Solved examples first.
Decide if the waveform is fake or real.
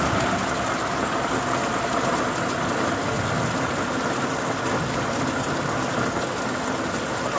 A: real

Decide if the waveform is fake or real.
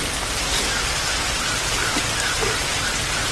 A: real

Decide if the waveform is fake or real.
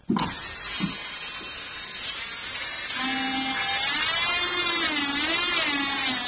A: real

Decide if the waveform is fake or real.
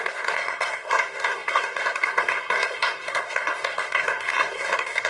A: fake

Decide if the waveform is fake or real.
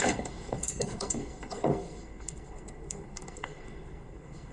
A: fake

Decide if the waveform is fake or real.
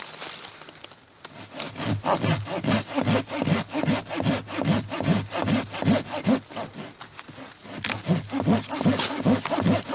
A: real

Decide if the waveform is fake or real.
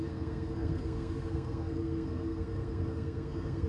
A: fake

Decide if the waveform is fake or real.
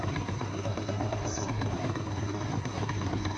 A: fake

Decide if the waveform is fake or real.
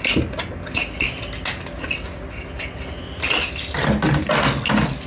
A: real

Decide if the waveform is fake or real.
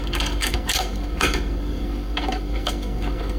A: fake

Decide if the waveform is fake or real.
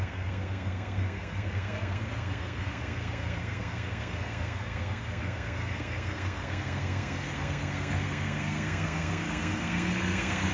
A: fake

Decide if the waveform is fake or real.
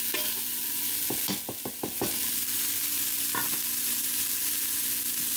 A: real